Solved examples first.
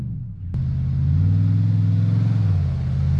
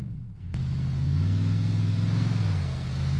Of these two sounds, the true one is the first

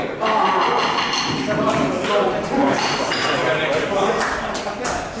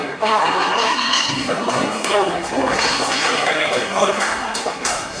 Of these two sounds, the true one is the first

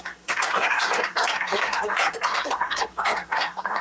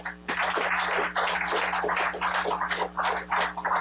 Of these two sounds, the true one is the second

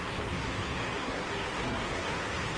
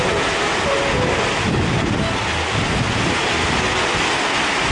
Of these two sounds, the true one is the second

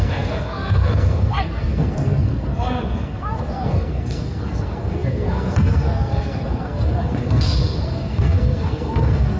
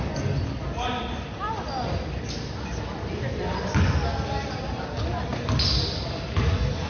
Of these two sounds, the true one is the second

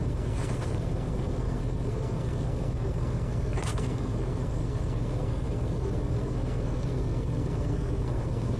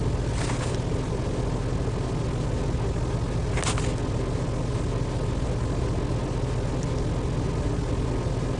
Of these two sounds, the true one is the second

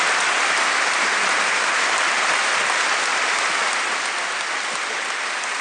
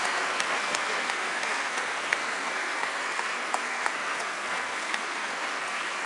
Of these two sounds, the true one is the first